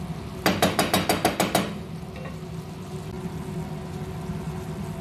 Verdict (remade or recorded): recorded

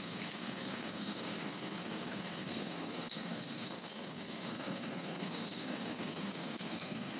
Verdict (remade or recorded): remade